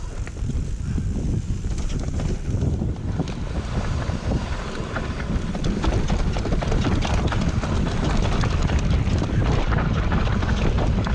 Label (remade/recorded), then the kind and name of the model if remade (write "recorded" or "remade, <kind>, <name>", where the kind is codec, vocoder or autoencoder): remade, vocoder, BigVGAN v2